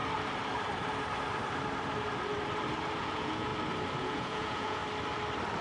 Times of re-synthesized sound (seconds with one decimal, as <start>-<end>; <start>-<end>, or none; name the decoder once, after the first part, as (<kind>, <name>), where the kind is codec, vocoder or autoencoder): 3.0-3.5 (vocoder, Vocos); 4.0-4.8